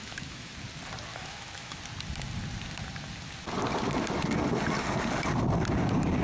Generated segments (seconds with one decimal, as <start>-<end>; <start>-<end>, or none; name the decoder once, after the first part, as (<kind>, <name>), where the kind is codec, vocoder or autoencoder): 0.0-0.5 (autoencoder, DAC-VAE); 1.1-1.8